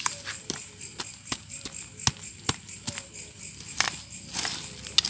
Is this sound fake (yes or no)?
no